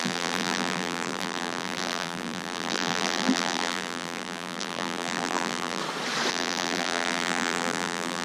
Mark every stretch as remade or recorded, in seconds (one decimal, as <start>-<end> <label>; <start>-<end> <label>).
0.0-5.8 remade; 5.8-6.3 recorded; 6.3-8.2 remade